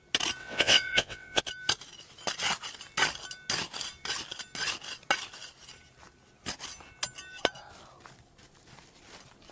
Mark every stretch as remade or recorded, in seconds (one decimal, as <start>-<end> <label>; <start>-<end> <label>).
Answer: 0.0-0.4 recorded; 0.4-1.4 remade; 1.4-9.5 recorded